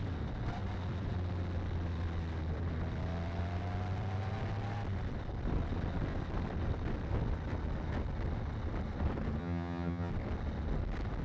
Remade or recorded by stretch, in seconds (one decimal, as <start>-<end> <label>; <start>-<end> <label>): 0.0-9.4 recorded; 9.4-10.1 remade; 10.1-11.2 recorded